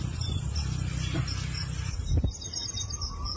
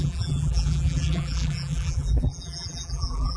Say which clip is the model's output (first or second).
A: second